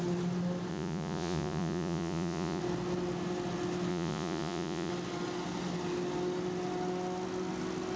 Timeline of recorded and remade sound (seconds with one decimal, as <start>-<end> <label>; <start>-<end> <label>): 0.0-0.7 recorded; 0.7-2.6 remade; 2.6-3.9 recorded; 3.9-4.9 remade; 4.9-8.0 recorded